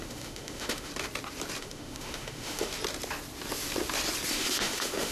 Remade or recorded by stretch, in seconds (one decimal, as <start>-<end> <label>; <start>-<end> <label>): 0.0-0.9 remade; 0.9-1.6 recorded; 1.6-2.7 remade; 2.7-4.3 recorded; 4.3-5.1 remade